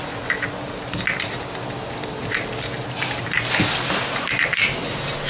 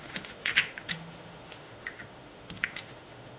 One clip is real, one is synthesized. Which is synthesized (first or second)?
second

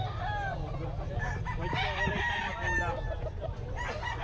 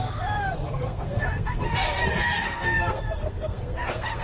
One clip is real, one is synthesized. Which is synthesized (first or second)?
second